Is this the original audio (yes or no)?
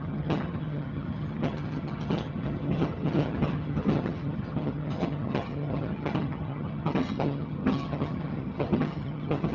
no